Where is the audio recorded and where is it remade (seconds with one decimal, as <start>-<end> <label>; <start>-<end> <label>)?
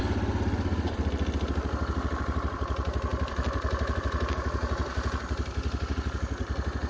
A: 0.0-6.9 recorded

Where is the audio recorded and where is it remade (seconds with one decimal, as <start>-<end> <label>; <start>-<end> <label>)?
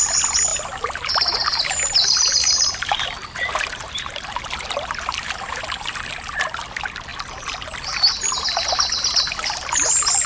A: 0.0-0.5 recorded; 0.5-5.6 remade; 5.6-10.3 recorded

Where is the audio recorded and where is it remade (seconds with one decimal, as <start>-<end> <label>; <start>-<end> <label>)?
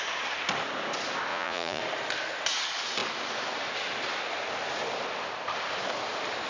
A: 0.0-1.3 recorded; 1.3-1.8 remade; 1.8-6.5 recorded